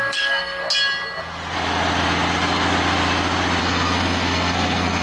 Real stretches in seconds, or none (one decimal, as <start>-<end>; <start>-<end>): 0.6-3.6